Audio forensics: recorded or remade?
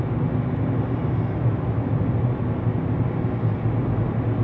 recorded